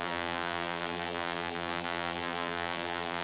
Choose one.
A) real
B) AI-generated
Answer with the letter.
B